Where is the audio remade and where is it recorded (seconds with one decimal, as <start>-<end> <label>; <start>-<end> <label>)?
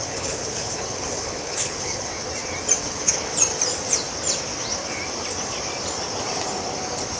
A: 0.0-2.1 remade; 2.1-2.8 recorded; 2.8-3.3 remade; 3.3-7.2 recorded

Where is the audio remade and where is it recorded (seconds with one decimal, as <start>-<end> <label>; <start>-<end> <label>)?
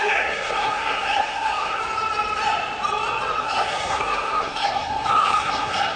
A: 0.0-1.8 remade; 1.8-3.4 recorded; 3.4-6.0 remade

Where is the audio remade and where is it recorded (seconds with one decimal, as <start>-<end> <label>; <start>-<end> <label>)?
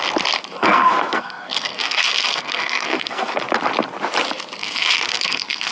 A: 0.0-0.6 recorded; 0.6-3.4 remade; 3.4-4.6 recorded; 4.6-5.7 remade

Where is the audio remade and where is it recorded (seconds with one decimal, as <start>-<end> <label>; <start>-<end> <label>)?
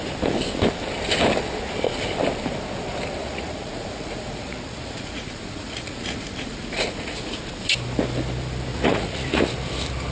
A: 0.0-3.2 recorded; 3.2-7.4 remade; 7.4-8.7 recorded; 8.7-9.5 remade; 9.5-10.1 recorded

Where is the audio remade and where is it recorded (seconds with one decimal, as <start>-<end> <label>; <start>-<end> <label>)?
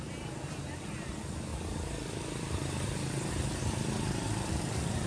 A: 0.0-5.1 recorded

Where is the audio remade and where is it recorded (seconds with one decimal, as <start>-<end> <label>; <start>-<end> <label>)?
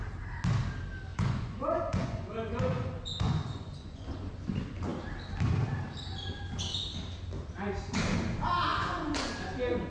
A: 0.0-1.1 recorded; 1.1-4.3 remade; 4.3-8.7 recorded; 8.7-9.3 remade; 9.3-9.9 recorded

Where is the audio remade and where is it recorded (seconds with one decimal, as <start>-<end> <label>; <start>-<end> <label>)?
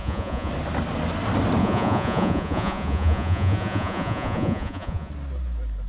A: 0.0-0.5 remade; 0.5-1.6 recorded; 1.6-5.1 remade; 5.1-5.9 recorded